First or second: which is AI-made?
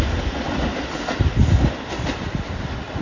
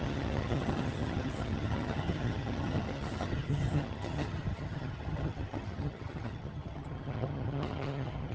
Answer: second